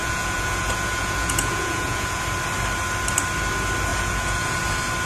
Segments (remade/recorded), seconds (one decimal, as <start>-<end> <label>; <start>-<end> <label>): 0.0-2.2 remade; 2.2-3.9 recorded; 3.9-4.6 remade; 4.6-5.1 recorded